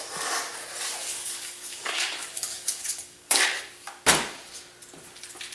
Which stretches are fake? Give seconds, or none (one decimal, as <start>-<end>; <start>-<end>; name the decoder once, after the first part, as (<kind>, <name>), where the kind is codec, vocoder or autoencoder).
1.1-3.6 (codec, DAC)

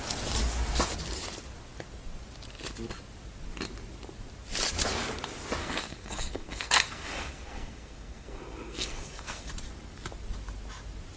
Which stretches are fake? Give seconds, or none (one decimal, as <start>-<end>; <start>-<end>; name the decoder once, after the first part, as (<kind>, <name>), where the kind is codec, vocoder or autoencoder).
5.6-9.5 (codec, SNAC)

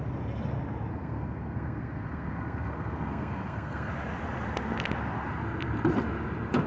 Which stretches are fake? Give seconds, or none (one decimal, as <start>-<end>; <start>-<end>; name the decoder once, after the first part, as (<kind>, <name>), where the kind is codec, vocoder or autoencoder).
0.9-3.9 (codec, SNAC)

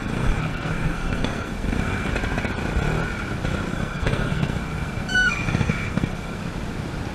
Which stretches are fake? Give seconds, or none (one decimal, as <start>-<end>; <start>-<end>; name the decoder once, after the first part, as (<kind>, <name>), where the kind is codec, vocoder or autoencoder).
0.0-2.1 (codec, SNAC); 3.7-6.4